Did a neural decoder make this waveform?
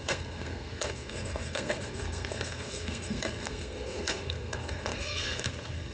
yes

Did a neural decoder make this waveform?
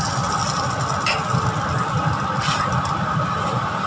no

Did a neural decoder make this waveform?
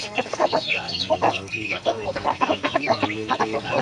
yes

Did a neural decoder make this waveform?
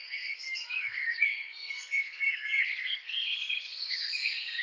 yes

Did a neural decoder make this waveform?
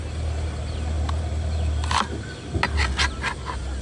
no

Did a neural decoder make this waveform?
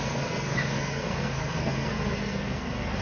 yes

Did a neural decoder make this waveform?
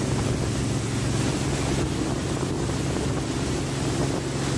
no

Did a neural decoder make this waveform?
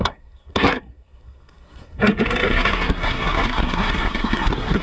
yes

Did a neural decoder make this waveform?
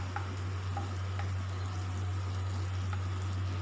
no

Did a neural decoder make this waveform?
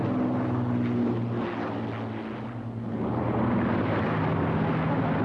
no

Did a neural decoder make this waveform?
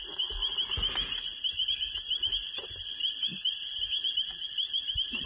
no